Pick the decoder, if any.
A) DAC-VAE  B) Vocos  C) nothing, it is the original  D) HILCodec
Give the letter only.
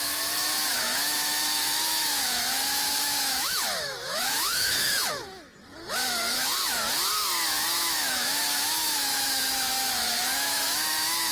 A